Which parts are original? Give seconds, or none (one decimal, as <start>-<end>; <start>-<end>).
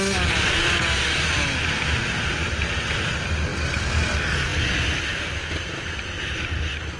0.0-7.0